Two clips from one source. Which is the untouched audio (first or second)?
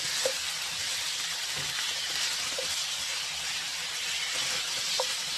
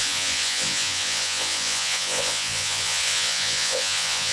first